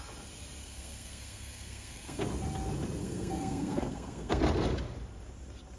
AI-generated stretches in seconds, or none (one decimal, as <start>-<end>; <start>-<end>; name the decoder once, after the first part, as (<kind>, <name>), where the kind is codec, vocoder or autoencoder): 0.6-2.2 (codec, SNAC); 3.0-4.4